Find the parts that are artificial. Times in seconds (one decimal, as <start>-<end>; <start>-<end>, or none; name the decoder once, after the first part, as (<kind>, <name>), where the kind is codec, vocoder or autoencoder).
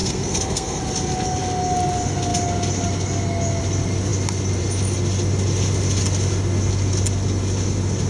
0.0-0.8 (codec, SNAC)